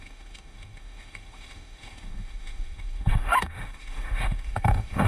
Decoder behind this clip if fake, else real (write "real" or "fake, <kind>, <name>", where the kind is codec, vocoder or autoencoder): fake, autoencoder, DAC-VAE